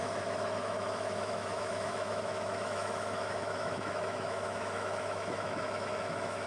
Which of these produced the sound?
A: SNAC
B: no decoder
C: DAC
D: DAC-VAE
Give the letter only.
D